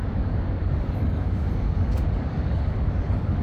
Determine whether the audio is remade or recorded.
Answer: remade